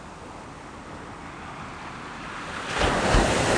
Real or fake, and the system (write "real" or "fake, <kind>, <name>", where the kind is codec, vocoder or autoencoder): real